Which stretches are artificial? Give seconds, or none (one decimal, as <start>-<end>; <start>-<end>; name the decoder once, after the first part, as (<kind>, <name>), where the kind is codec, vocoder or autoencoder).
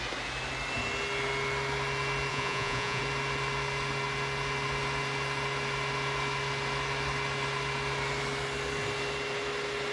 2.3-3.0 (vocoder, Vocos)